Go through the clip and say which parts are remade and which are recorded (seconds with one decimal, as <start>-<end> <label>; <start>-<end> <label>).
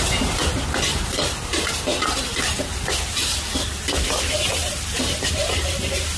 0.0-0.9 recorded; 0.9-4.1 remade; 4.1-4.6 recorded; 4.6-5.3 remade; 5.3-6.2 recorded